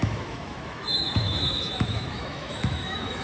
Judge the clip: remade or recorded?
remade